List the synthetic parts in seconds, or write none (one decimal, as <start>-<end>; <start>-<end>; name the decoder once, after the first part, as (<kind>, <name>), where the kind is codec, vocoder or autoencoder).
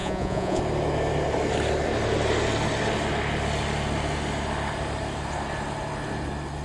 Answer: 0.0-0.6 (vocoder, Vocos)